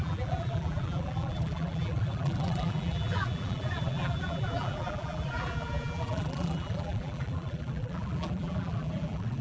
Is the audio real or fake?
fake